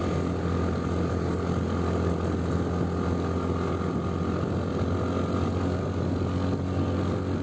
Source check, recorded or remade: recorded